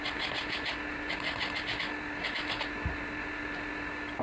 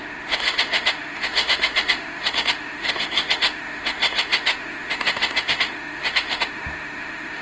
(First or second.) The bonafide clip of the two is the first